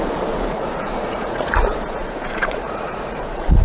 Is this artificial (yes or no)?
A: yes